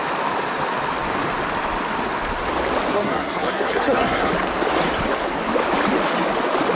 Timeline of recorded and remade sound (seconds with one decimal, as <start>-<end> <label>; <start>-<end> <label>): 0.0-2.9 recorded; 2.9-4.3 remade; 4.3-6.8 recorded